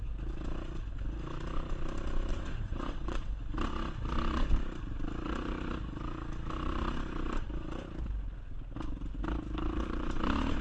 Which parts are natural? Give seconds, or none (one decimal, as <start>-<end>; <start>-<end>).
0.0-2.3; 3.3-10.6